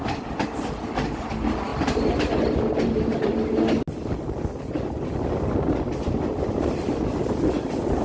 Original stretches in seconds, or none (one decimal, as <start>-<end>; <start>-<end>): 0.0-8.0